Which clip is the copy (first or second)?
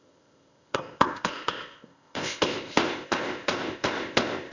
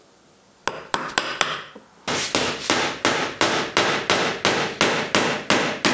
first